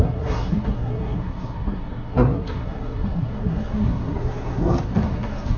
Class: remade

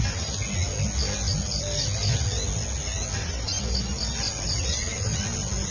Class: recorded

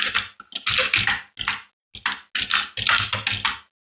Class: recorded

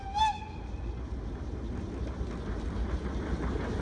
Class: recorded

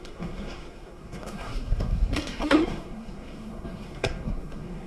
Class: remade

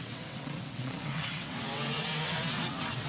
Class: remade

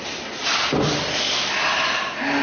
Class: recorded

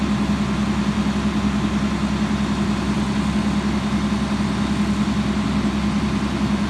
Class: recorded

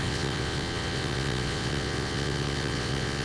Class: remade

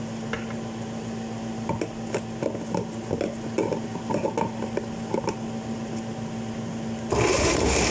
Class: recorded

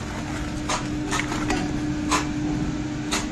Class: recorded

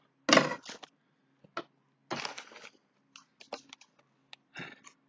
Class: recorded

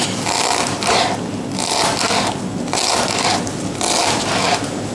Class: recorded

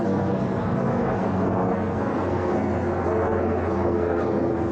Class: remade